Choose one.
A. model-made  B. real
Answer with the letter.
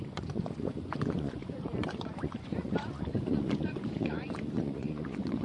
A